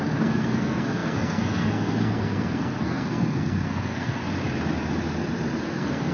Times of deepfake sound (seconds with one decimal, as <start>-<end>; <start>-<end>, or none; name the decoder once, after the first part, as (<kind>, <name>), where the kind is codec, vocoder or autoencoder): 0.0-4.2 (codec, SNAC); 5.6-6.1